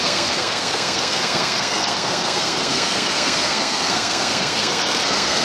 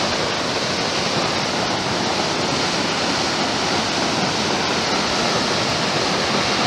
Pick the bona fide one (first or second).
second